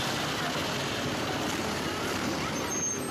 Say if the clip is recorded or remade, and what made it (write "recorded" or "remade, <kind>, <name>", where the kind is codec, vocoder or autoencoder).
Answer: recorded